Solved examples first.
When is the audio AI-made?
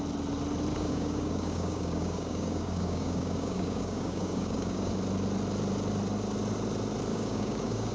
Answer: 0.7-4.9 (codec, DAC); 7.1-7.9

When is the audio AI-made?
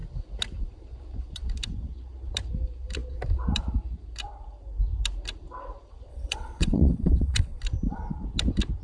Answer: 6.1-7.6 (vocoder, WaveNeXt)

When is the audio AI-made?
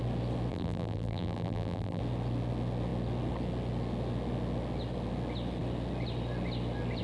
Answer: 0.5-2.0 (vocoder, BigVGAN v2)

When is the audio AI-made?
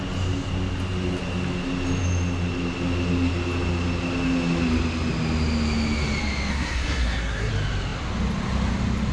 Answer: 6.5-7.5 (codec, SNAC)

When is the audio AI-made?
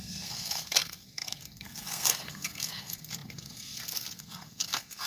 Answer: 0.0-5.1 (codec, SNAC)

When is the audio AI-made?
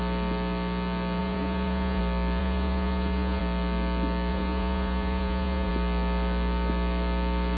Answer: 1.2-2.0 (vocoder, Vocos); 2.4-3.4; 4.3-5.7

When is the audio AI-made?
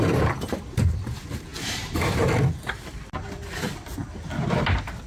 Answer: none